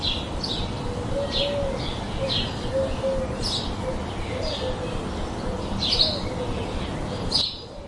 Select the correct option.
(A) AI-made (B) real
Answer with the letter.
B